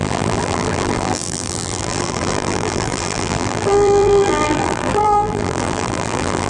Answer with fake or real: fake